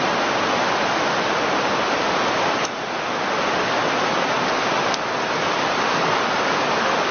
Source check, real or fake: real